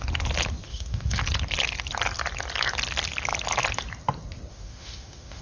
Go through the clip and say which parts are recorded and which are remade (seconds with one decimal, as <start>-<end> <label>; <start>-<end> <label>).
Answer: 0.0-0.7 recorded; 0.7-1.2 remade; 1.2-4.5 recorded; 4.5-5.4 remade